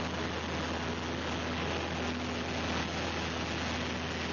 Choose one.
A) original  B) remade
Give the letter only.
A